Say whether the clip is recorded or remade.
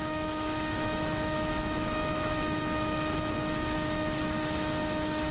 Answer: remade